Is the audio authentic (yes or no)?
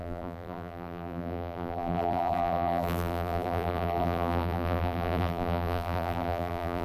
no